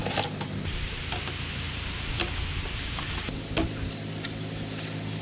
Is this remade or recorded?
recorded